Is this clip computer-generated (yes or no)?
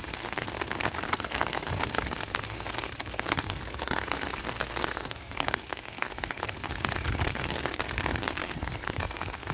yes